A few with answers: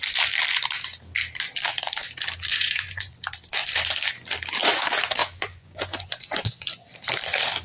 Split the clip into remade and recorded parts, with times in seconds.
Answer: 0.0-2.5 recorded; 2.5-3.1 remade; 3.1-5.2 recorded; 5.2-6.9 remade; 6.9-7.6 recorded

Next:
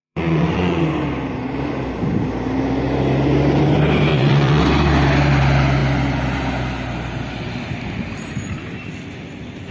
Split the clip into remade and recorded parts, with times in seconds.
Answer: 0.0-0.8 remade; 0.8-4.1 recorded; 4.1-4.6 remade; 4.6-9.7 recorded

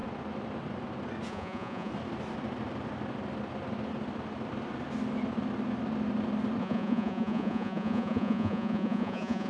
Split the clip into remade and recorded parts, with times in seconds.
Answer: 0.0-1.3 recorded; 1.3-1.9 remade; 1.9-6.6 recorded; 6.6-9.5 remade